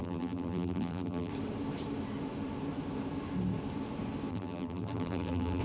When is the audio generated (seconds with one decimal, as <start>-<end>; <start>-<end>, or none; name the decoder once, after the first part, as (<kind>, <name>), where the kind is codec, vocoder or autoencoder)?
0.0-1.3 (vocoder, BigVGAN v2); 4.3-5.6